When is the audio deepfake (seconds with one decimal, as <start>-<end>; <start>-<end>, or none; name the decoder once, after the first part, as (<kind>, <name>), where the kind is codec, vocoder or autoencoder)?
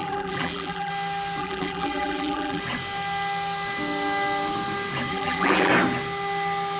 0.0-0.9 (vocoder, BigVGAN v2); 1.4-2.6; 5.1-5.7